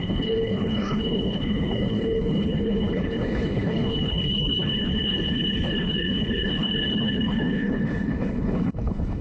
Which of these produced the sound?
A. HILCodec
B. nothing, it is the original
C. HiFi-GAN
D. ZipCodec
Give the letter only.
A